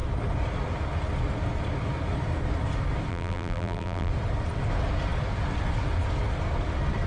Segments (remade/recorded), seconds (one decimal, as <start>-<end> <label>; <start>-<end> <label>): 0.0-3.1 recorded; 3.1-4.1 remade; 4.1-7.1 recorded